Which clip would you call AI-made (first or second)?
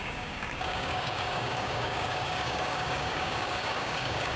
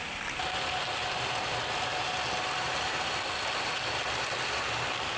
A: first